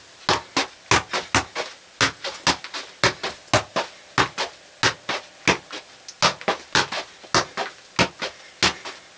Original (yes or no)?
yes